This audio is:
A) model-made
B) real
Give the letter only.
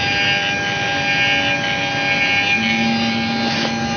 B